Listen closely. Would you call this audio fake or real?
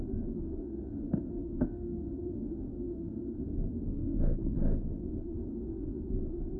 fake